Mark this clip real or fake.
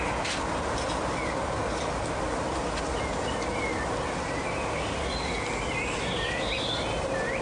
real